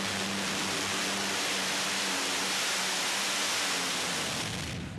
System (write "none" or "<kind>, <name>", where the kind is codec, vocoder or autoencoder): none